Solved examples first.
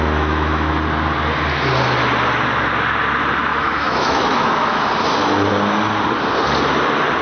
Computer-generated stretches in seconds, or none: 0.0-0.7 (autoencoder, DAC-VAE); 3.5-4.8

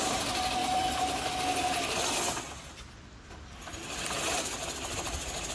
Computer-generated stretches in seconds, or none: none

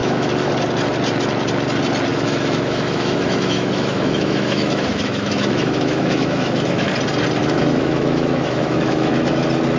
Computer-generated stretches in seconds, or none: 0.0-0.5 (autoencoder, DAC-VAE); 2.1-6.9; 7.4-9.3

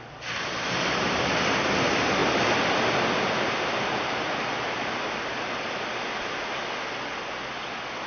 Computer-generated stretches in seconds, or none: none

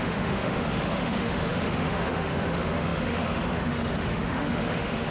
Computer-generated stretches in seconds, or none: 0.0-5.1 (autoencoder, DAC-VAE)

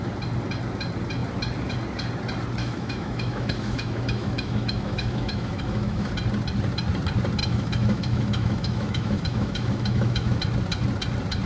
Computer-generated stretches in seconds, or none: 2.6-6.1 (autoencoder, DAC-VAE); 7.4-10.4

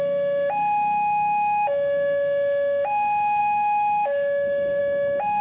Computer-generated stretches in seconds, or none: 3.4-4.8 (autoencoder, DAC-VAE)